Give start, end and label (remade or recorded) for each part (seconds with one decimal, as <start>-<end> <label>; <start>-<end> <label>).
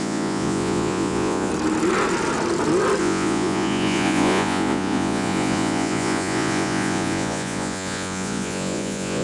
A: 0.0-1.5 remade; 1.5-3.0 recorded; 3.0-9.2 remade